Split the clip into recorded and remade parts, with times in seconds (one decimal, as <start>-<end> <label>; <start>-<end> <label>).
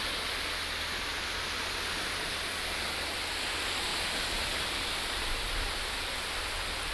0.0-6.9 recorded